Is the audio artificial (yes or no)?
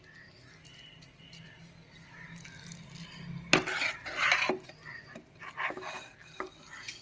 no